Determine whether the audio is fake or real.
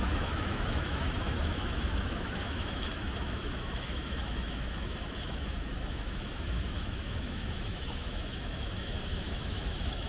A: fake